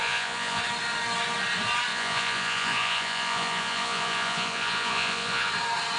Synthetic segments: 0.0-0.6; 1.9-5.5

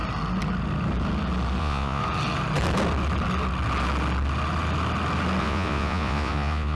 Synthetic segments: 1.6-2.0; 5.4-6.8

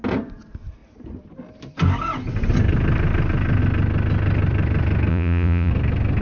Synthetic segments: 5.1-5.7

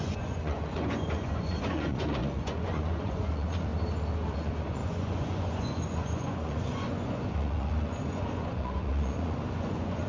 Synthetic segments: 0.0-3.7; 4.3-10.1

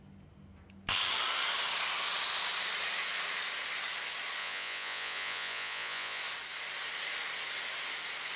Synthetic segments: 4.4-6.2

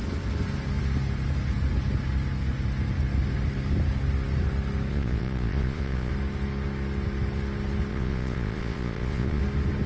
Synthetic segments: 4.9-6.1; 7.9-9.4